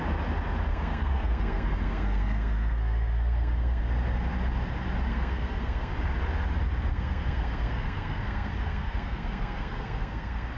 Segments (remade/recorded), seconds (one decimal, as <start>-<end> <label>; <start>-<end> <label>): 0.0-0.7 recorded; 0.7-3.8 remade; 3.8-5.1 recorded; 5.1-5.9 remade; 5.9-6.9 recorded; 6.9-10.6 remade